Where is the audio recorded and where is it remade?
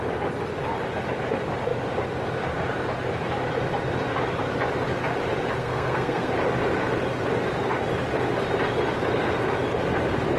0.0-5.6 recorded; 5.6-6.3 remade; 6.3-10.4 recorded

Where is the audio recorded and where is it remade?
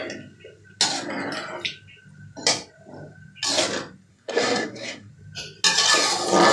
0.0-4.1 recorded; 4.1-5.1 remade; 5.1-6.5 recorded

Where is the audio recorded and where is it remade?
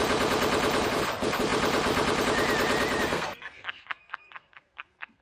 0.0-3.1 recorded; 3.1-5.2 remade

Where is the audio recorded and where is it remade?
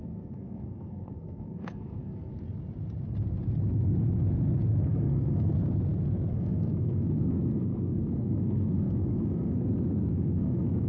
0.0-2.3 remade; 2.3-4.8 recorded; 4.8-5.5 remade; 5.5-6.3 recorded; 6.3-9.6 remade; 9.6-10.1 recorded; 10.1-10.9 remade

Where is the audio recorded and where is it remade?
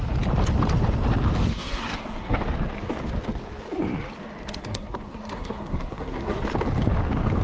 0.0-1.5 recorded; 1.5-2.4 remade; 2.4-4.6 recorded; 4.6-6.4 remade; 6.4-7.4 recorded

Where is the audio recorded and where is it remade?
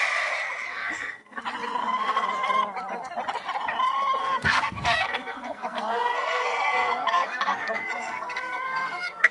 0.0-0.7 recorded; 0.7-1.4 remade; 1.4-1.8 recorded; 1.8-2.3 remade; 2.3-4.2 recorded; 4.2-9.3 remade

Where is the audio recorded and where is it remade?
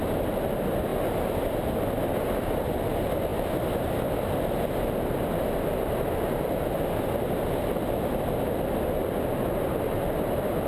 0.0-10.7 recorded